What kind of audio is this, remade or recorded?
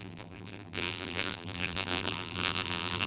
remade